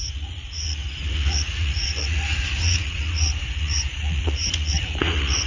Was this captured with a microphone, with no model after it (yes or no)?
no